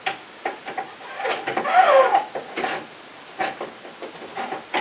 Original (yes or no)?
yes